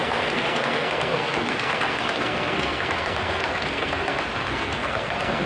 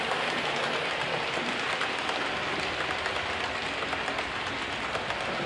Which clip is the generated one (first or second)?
first